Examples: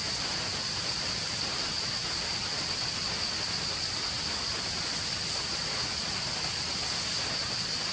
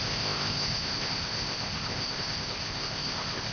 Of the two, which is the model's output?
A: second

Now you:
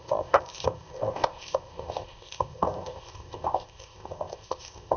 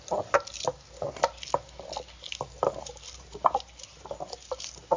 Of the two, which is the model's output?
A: first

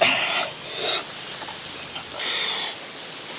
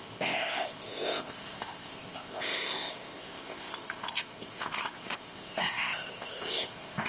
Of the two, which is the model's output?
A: second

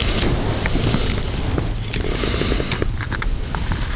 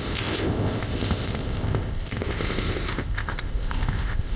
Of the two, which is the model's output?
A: second